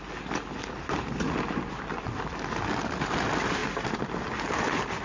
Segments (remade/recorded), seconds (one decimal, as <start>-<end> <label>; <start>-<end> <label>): 0.0-5.0 recorded